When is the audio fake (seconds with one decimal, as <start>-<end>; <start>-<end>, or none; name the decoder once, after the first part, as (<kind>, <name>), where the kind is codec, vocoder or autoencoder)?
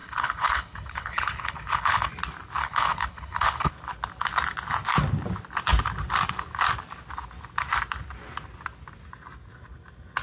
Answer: 0.0-2.1 (codec, HILCodec); 2.6-3.7